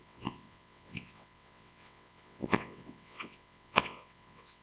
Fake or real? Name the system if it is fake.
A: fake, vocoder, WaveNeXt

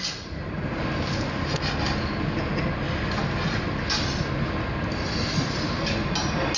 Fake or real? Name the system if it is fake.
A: real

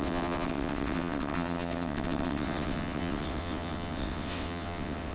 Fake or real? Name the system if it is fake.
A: fake, vocoder, WaveNeXt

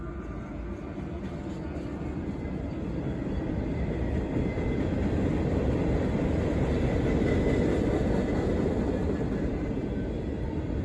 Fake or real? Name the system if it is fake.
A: real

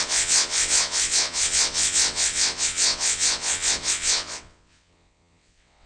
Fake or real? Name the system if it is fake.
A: fake, vocoder, WaveNeXt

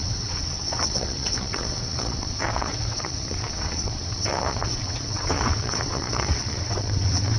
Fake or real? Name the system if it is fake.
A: fake, vocoder, WaveNeXt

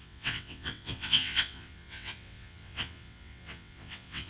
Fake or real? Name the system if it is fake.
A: fake, vocoder, WaveNeXt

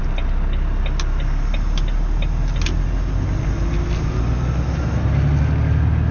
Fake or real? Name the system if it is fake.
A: real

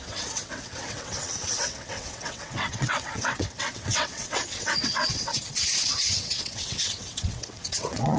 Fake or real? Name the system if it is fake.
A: fake, vocoder, WaveNeXt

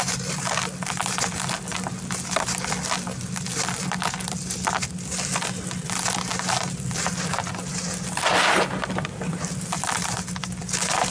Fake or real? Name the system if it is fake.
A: real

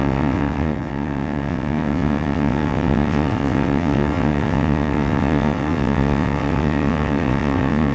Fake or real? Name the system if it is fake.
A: fake, vocoder, WaveNeXt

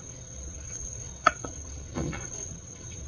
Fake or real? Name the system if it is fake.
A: fake, vocoder, WaveNeXt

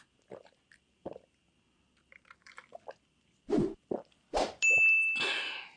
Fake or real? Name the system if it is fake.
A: real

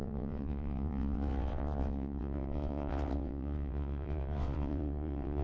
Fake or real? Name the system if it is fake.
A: fake, vocoder, WaveNeXt